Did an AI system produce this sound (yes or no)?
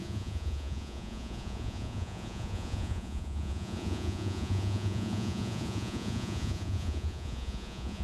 yes